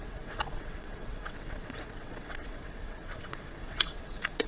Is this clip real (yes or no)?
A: no